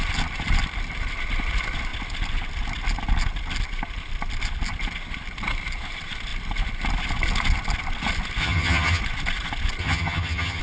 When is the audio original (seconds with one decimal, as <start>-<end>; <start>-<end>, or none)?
0.0-8.4; 9.0-9.8